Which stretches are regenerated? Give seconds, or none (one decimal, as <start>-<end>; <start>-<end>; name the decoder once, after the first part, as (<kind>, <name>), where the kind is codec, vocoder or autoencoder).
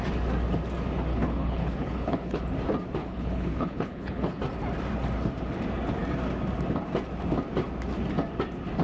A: 1.1-2.4 (codec, HILCodec); 3.0-4.4